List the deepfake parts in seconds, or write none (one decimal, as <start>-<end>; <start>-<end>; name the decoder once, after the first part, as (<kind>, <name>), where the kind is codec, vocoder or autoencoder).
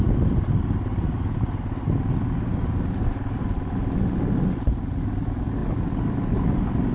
none